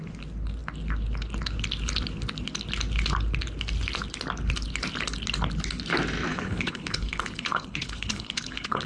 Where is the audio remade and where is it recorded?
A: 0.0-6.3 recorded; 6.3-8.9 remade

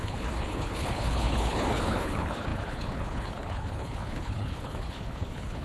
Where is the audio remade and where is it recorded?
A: 0.0-5.6 remade

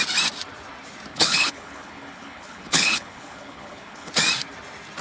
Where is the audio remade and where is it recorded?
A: 0.0-1.1 recorded; 1.1-4.1 remade; 4.1-5.0 recorded

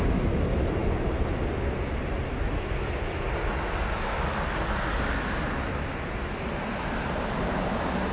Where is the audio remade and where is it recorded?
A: 0.0-8.1 recorded

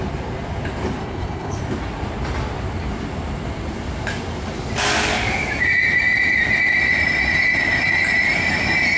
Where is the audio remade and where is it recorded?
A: 0.0-1.0 recorded; 1.0-1.6 remade; 1.6-9.0 recorded